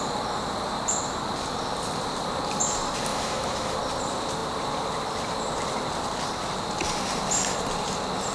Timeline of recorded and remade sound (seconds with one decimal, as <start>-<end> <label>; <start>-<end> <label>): 0.0-3.1 recorded; 3.1-3.8 remade; 3.8-8.3 recorded